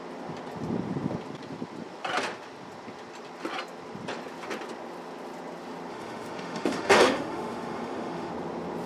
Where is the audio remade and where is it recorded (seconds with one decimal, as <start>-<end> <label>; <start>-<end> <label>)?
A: 0.0-5.9 recorded; 5.9-8.3 remade; 8.3-8.9 recorded